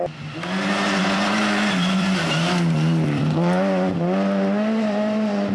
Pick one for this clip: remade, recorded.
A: remade